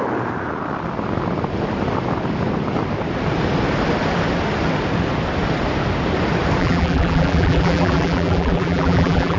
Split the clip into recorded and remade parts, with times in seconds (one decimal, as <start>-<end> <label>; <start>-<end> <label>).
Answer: 0.0-6.6 recorded; 6.6-9.4 remade

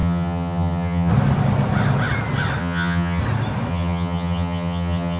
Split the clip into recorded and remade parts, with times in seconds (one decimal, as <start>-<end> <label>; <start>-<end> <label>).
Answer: 0.0-1.1 remade; 1.1-2.6 recorded; 2.6-3.2 remade; 3.2-3.7 recorded; 3.7-5.2 remade

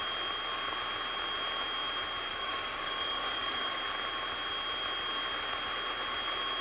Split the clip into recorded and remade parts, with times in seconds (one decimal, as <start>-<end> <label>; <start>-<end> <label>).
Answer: 0.0-2.3 recorded; 2.3-3.8 remade; 3.8-6.6 recorded